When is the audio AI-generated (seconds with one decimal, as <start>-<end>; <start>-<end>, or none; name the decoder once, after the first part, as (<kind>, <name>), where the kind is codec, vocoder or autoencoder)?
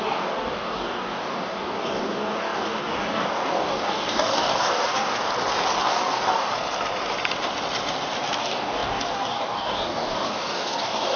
0.0-5.3 (codec, DAC); 5.8-6.5; 8.4-11.2